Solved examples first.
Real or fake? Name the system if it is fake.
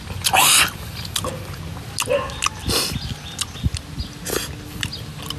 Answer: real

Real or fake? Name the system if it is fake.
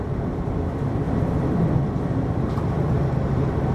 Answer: real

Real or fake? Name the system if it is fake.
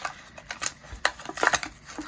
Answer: real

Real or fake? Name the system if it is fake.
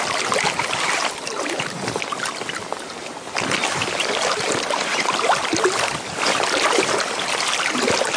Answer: real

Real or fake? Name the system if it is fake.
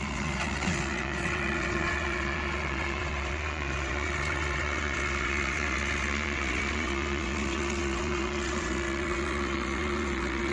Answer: fake, vocoder, WaveNeXt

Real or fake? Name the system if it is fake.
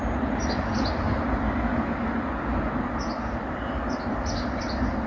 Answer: real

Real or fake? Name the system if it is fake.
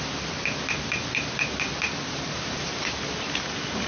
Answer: real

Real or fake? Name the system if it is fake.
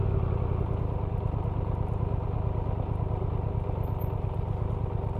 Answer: real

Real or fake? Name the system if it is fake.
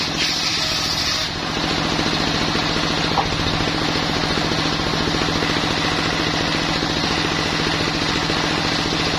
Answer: real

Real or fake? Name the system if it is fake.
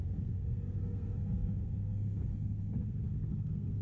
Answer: fake, codec, SNAC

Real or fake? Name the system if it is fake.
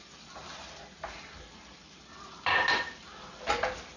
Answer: real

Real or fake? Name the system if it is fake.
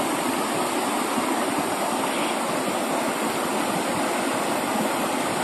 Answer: real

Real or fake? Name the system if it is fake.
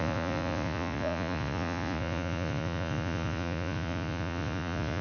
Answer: fake, vocoder, Vocos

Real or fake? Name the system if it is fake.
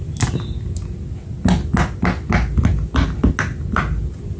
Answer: real